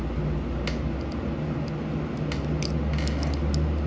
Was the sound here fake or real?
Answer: real